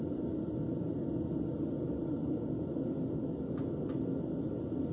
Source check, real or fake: real